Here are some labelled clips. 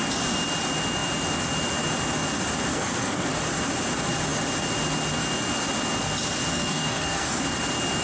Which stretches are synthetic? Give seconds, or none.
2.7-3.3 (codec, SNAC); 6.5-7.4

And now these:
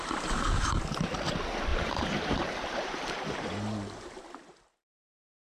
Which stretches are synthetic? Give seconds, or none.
1.7-4.2 (vocoder, BigVGAN v2)

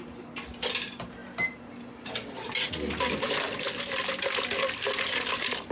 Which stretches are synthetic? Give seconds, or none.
none